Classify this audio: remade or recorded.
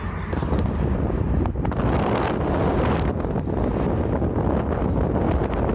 recorded